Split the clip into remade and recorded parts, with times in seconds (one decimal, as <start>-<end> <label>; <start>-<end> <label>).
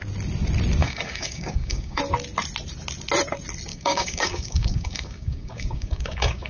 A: 0.0-0.8 recorded; 0.8-2.0 remade; 2.0-3.7 recorded; 3.7-6.5 remade